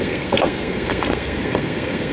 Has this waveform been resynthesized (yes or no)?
yes